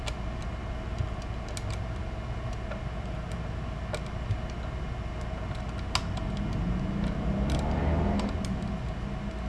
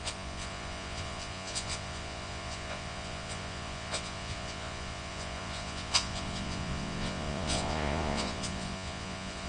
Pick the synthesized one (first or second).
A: second